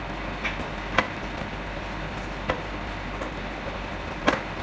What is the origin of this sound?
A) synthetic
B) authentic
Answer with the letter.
B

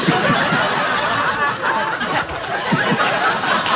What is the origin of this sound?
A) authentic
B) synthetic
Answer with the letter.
A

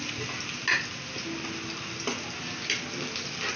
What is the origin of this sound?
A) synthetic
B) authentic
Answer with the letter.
B